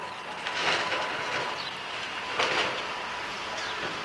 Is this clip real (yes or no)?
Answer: yes